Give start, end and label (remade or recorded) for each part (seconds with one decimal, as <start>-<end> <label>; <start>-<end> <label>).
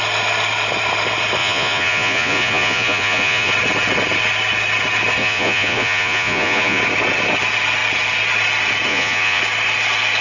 0.0-1.4 recorded; 1.4-3.5 remade; 3.5-5.2 recorded; 5.2-6.8 remade; 6.8-8.9 recorded; 8.9-9.4 remade; 9.4-10.2 recorded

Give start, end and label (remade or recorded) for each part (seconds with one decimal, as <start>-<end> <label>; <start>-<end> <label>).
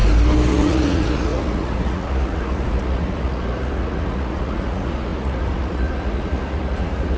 0.0-0.5 recorded; 0.5-7.2 remade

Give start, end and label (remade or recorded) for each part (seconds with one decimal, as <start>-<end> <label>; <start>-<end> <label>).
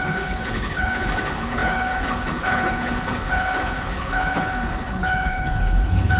0.0-6.2 remade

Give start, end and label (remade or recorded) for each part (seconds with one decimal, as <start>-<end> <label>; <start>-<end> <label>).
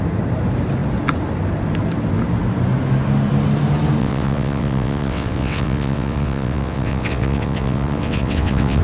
0.0-4.0 recorded; 4.0-8.8 remade